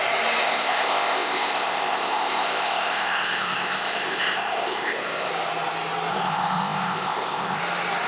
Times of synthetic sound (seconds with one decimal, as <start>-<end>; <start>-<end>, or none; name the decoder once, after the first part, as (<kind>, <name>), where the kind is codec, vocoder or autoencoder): 0.4-5.3 (codec, ZipCodec); 6.1-7.6